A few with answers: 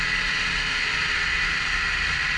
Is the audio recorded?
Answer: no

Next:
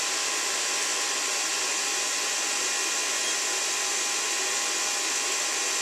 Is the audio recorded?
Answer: yes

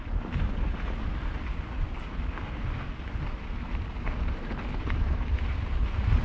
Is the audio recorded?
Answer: yes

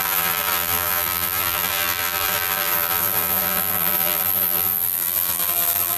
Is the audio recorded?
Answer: no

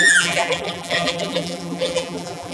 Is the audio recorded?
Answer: no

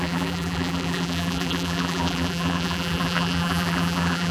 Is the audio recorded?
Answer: no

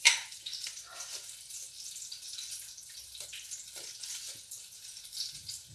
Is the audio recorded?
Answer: no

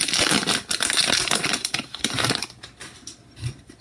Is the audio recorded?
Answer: yes